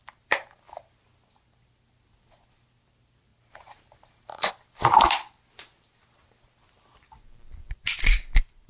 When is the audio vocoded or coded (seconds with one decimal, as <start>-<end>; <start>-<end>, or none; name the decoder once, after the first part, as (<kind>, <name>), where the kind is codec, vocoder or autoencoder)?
3.3-4.5 (vocoder, BigVGAN v2)